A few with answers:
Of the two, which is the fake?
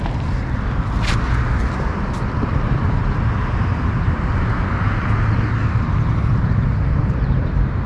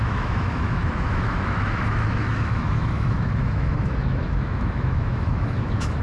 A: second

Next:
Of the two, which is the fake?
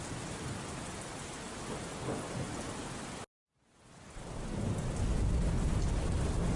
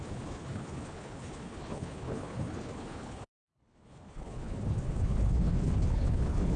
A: second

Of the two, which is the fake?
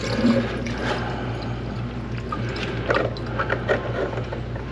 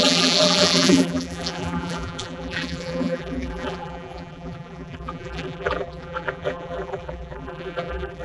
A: second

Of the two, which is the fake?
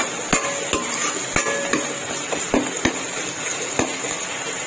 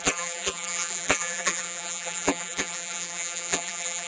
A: second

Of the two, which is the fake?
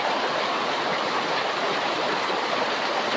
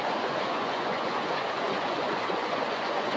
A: second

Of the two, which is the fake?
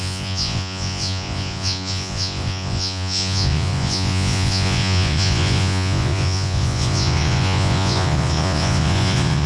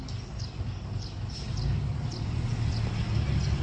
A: first